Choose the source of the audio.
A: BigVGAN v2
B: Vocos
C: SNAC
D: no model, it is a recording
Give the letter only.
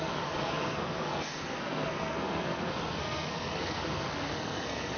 C